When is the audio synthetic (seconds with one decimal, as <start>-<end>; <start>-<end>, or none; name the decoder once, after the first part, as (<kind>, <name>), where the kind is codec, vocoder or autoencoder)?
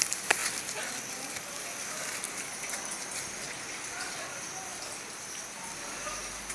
0.4-2.2 (vocoder, BigVGAN v2); 4.7-6.1